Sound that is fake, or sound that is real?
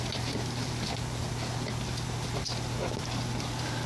real